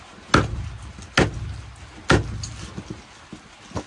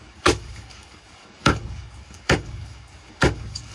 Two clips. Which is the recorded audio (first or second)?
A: first